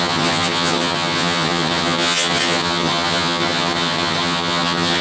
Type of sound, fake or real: fake